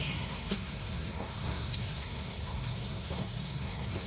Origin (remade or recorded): remade